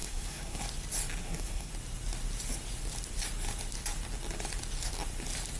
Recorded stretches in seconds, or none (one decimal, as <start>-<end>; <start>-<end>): 0.6-1.2; 1.7-5.6